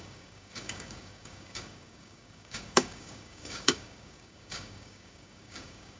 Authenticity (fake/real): fake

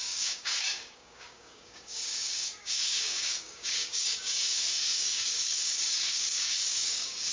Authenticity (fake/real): fake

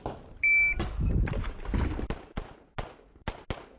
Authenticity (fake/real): real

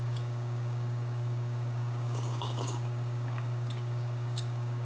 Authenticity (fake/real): fake